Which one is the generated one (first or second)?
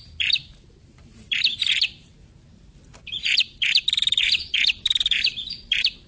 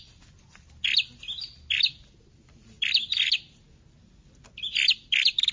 first